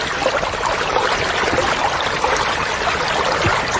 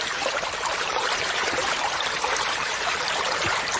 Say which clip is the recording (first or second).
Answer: first